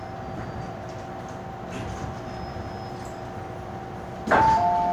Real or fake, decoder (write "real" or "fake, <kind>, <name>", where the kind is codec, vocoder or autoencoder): real